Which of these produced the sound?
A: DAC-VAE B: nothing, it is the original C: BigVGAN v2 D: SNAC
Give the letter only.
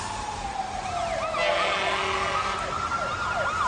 B